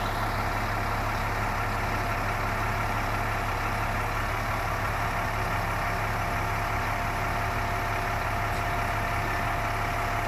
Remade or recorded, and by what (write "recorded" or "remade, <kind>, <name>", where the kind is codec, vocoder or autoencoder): recorded